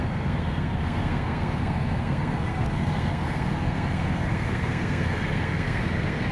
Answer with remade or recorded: remade